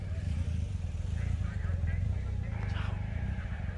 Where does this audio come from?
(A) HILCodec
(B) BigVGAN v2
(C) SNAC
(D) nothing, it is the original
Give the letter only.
D